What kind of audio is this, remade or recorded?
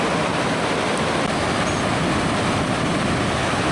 recorded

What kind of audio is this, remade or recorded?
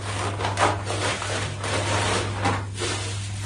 recorded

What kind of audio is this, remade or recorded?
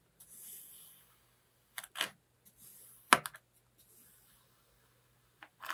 recorded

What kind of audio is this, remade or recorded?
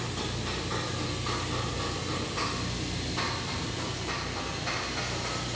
recorded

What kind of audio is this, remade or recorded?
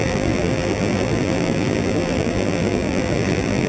remade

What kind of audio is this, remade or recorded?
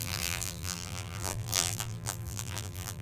remade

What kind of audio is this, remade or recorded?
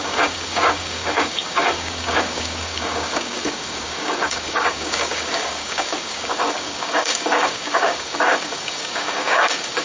remade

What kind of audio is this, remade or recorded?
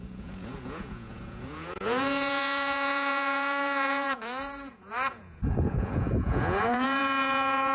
remade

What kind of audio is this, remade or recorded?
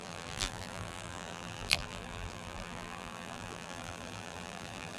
remade